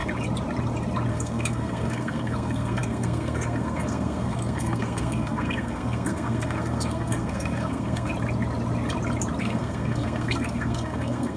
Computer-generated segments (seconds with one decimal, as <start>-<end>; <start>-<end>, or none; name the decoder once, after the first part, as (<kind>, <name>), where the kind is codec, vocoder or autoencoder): 1.1-8.1 (codec, SNAC); 9.4-11.4